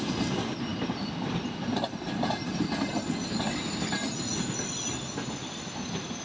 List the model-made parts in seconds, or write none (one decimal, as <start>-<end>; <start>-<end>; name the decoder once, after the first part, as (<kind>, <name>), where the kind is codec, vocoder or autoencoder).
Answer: none